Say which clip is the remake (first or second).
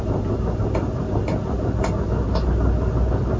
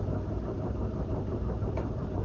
second